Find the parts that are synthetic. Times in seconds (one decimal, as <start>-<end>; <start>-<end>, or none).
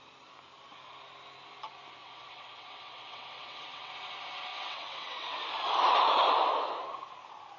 2.0-3.9; 4.5-5.4